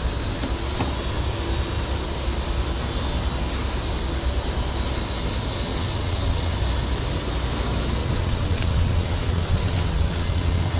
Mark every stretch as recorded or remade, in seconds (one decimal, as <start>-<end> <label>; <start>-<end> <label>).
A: 0.0-5.7 recorded; 5.7-6.5 remade; 6.5-8.0 recorded; 8.0-10.8 remade